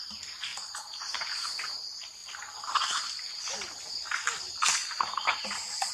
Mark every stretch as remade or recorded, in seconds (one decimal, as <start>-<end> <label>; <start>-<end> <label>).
0.0-5.9 recorded